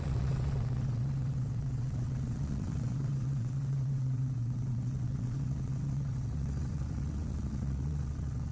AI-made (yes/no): yes